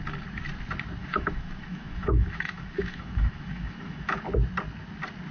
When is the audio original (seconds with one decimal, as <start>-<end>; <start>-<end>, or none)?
0.0-1.0; 4.2-5.3